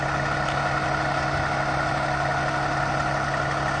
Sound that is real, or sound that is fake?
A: real